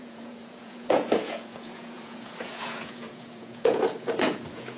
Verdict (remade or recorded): remade